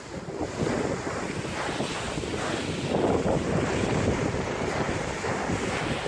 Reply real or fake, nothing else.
real